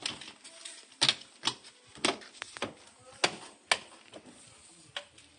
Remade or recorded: recorded